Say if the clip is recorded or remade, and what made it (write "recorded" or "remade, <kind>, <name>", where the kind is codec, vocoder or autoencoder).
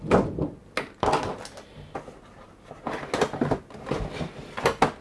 recorded